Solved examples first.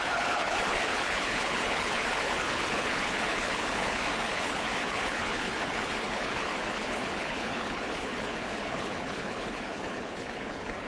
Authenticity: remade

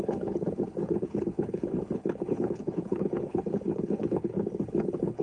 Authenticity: remade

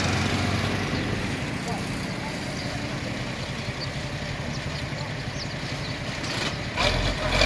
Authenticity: recorded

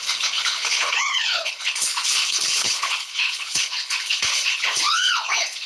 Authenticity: remade